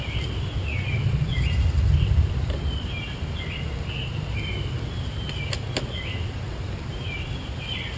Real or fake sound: real